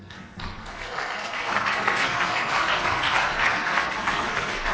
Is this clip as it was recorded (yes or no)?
no